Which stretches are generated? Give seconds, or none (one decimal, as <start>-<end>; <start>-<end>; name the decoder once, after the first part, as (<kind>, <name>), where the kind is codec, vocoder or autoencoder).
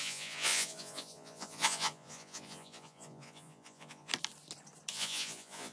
0.0-4.1 (vocoder, Vocos); 4.9-5.7